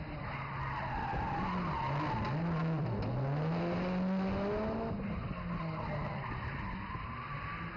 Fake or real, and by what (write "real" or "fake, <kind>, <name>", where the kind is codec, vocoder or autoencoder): real